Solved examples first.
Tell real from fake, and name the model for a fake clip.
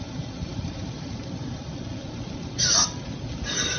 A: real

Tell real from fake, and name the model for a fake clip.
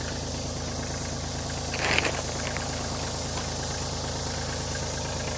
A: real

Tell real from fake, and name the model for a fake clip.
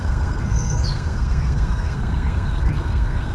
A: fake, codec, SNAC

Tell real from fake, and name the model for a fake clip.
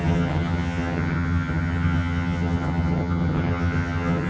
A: fake, vocoder, HiFi-GAN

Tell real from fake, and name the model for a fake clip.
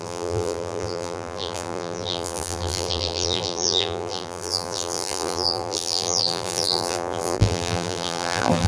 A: fake, vocoder, BigVGAN v2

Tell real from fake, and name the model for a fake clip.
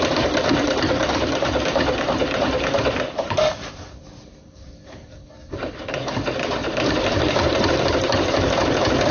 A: fake, vocoder, BigVGAN v2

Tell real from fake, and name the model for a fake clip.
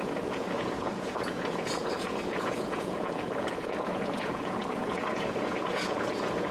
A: fake, vocoder, Vocos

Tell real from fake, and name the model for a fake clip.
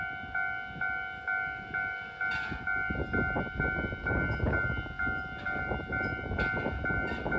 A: real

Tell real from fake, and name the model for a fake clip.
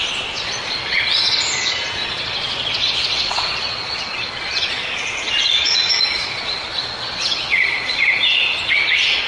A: fake, vocoder, Vocos